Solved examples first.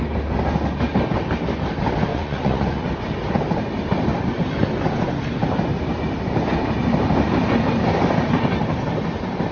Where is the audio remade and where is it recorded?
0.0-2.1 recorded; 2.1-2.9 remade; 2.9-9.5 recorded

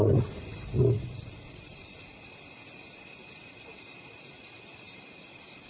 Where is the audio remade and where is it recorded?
0.0-0.5 recorded; 0.5-1.9 remade; 1.9-5.7 recorded

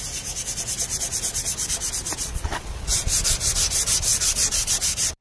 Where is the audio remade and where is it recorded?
0.0-2.2 recorded; 2.2-2.9 remade; 2.9-4.1 recorded; 4.1-4.7 remade; 4.7-5.2 recorded

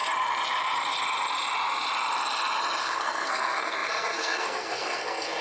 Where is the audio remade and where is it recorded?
0.0-2.8 recorded; 2.8-5.4 remade

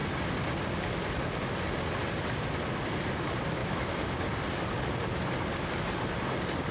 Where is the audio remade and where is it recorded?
0.0-3.6 recorded; 3.6-4.2 remade; 4.2-6.7 recorded